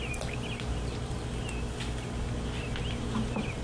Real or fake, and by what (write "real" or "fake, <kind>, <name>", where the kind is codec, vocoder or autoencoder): real